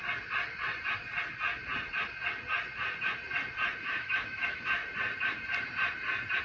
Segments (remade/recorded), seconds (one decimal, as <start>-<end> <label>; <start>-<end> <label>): 0.0-3.8 recorded; 3.8-4.8 remade; 4.8-6.4 recorded